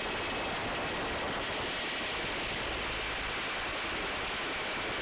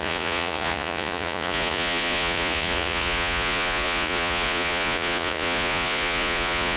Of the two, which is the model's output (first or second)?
second